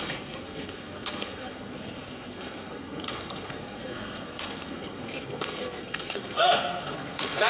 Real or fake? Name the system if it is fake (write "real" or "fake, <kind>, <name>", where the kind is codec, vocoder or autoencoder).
fake, codec, SNAC